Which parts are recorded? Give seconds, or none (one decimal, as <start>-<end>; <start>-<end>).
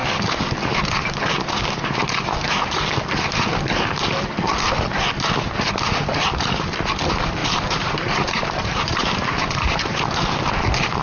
0.0-7.4; 10.0-11.0